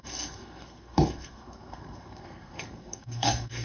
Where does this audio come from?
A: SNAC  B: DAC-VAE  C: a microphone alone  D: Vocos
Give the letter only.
A